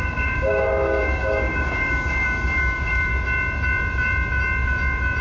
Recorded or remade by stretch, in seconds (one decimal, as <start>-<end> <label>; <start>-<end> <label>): 0.0-3.1 remade; 3.1-5.2 recorded